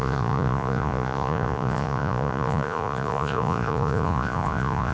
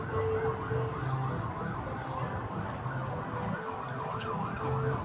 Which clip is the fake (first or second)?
first